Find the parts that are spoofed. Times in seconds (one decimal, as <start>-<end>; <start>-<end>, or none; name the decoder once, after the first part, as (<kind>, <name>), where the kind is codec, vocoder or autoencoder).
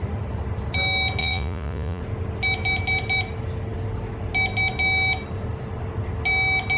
1.2-2.0 (vocoder, Vocos)